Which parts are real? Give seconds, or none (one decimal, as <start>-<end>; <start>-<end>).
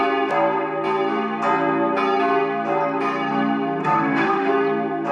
0.0-3.8; 4.5-5.1